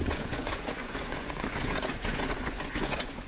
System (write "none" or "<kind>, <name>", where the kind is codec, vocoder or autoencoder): vocoder, Vocos